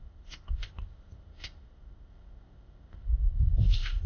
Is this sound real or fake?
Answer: fake